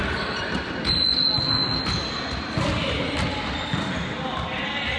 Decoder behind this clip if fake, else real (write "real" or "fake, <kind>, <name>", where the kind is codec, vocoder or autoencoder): real